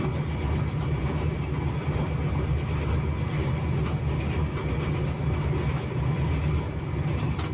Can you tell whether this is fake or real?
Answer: real